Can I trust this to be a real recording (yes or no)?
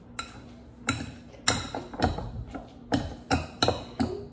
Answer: yes